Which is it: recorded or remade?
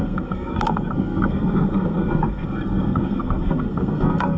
remade